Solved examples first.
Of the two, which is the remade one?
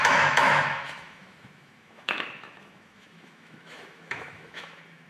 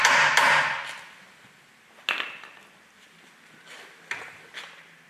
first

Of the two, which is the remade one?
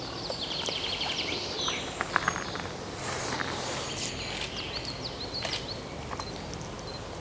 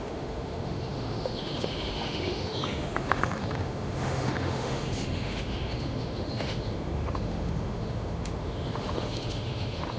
second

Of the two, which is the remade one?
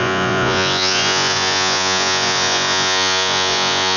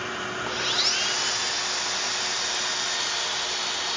first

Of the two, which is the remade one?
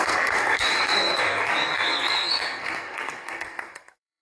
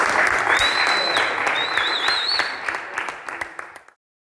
first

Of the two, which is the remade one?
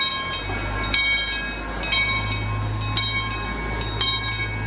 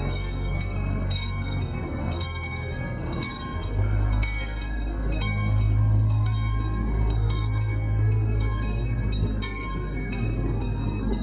second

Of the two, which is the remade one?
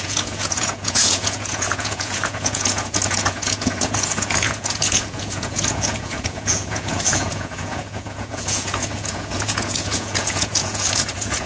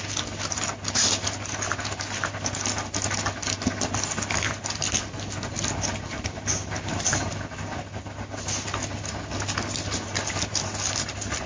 first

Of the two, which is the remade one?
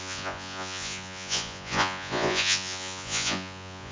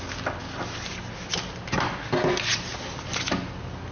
first